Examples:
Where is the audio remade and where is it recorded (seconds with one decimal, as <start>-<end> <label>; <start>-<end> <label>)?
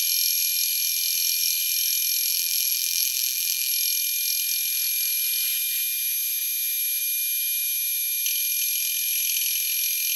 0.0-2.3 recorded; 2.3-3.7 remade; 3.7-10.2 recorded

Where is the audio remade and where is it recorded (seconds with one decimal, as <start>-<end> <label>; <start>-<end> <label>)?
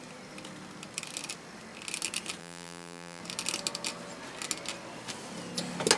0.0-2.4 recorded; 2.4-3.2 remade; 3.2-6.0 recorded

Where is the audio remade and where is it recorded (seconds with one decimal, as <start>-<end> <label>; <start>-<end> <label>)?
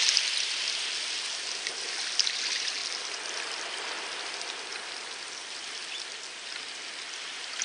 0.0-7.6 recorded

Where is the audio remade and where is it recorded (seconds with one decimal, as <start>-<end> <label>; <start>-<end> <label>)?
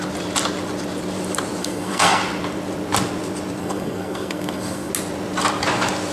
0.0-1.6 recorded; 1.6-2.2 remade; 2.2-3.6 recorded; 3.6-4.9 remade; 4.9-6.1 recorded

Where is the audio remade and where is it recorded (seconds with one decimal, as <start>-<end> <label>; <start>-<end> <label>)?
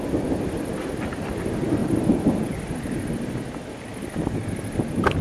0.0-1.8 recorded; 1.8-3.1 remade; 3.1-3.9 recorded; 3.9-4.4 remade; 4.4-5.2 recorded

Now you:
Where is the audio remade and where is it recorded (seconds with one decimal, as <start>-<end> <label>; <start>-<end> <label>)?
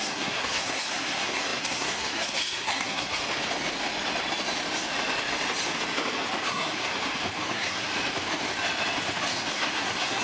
0.0-3.2 remade; 3.2-6.5 recorded; 6.5-6.9 remade; 6.9-7.5 recorded; 7.5-7.9 remade; 7.9-9.5 recorded; 9.5-10.2 remade